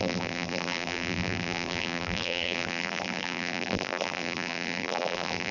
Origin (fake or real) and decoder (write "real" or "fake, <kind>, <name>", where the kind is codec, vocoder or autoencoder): fake, vocoder, BigVGAN v2